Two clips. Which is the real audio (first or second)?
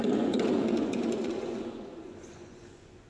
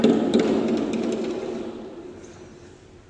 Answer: second